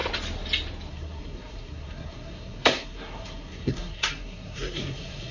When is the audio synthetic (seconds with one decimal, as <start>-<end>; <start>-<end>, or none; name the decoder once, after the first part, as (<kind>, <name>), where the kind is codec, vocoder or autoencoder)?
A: 0.9-5.3 (codec, SNAC)